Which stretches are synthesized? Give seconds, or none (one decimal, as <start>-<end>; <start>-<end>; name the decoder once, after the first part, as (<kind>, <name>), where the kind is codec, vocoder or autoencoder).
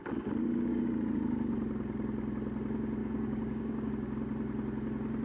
0.0-0.8 (codec, DAC); 3.0-3.9